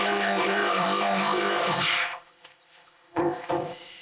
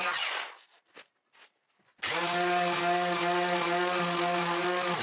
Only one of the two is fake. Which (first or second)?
first